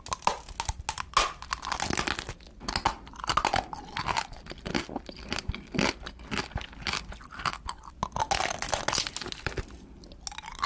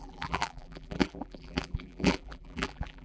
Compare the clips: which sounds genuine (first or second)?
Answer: first